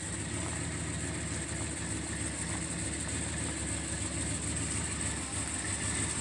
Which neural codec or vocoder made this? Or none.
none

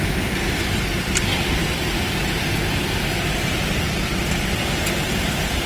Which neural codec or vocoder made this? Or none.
vocoder, BigVGAN v2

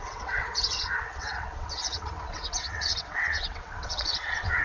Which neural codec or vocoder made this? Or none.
vocoder, WaveNeXt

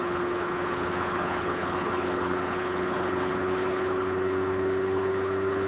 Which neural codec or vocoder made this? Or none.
codec, HILCodec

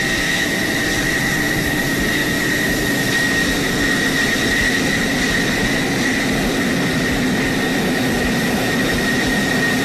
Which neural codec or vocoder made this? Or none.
none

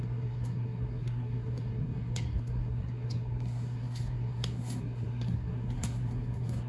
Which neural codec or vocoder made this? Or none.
codec, SNAC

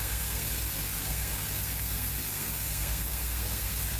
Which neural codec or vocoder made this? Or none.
codec, SNAC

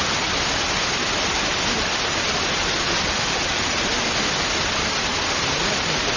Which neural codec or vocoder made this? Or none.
none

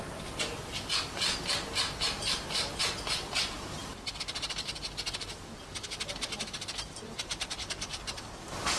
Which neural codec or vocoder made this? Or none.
vocoder, BigVGAN v2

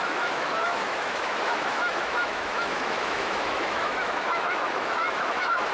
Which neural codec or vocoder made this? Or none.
autoencoder, DAC-VAE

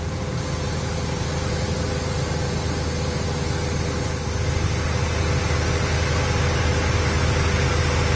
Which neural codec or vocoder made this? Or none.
none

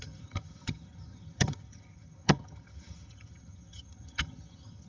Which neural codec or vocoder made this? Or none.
vocoder, HiFi-GAN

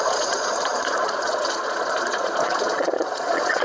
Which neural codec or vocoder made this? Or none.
vocoder, Vocos